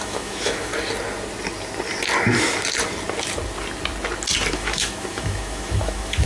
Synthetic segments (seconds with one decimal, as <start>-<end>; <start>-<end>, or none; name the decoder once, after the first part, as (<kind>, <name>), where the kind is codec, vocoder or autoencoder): 0.0-0.7 (autoencoder, DAC-VAE); 4.5-6.3